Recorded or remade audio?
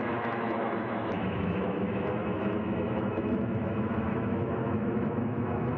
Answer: remade